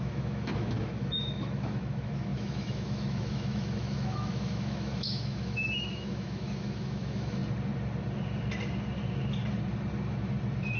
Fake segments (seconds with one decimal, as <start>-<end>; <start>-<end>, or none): 0.0-7.4